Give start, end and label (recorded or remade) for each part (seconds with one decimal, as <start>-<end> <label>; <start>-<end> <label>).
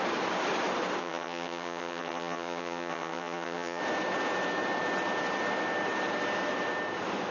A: 0.0-1.0 recorded; 1.0-3.8 remade; 3.8-7.3 recorded